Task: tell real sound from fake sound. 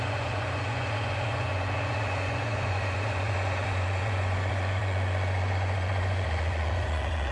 fake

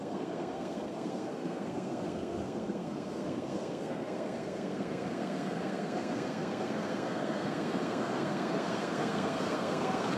fake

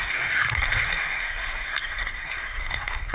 fake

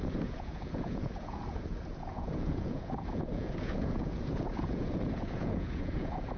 fake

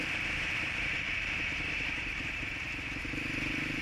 fake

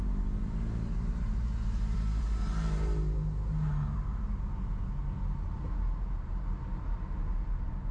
real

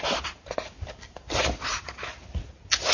real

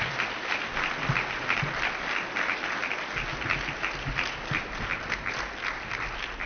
real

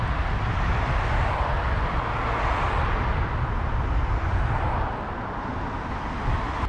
real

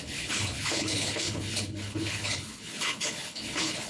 fake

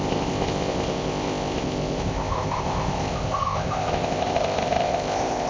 fake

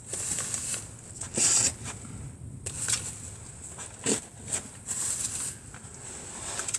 real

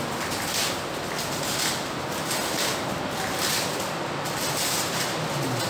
real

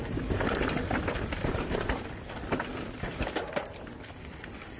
real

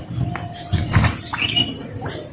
real